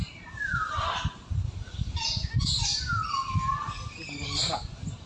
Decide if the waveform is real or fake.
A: real